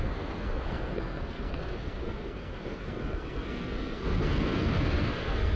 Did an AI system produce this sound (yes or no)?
yes